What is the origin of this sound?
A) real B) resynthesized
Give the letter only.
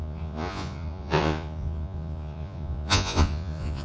B